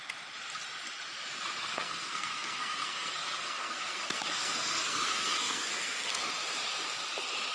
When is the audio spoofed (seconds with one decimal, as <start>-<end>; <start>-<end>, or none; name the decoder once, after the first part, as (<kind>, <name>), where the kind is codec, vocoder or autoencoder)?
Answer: 1.6-6.1 (codec, SNAC)